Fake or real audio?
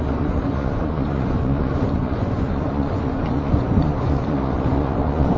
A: fake